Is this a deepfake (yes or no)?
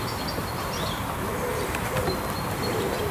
no